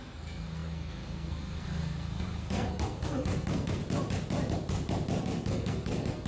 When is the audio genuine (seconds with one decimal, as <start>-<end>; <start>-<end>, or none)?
3.8-5.2